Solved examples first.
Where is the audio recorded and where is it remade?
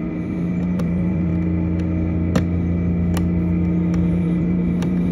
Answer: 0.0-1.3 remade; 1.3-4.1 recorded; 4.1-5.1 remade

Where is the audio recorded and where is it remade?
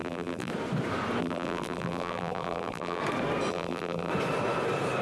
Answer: 0.0-0.5 remade; 0.5-1.2 recorded; 1.2-3.0 remade; 3.0-3.5 recorded; 3.5-4.1 remade; 4.1-5.0 recorded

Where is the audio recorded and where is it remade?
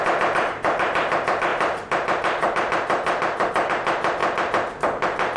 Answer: 0.0-4.2 remade; 4.2-4.8 recorded; 4.8-5.4 remade